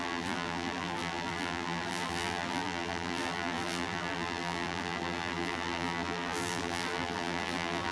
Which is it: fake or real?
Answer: fake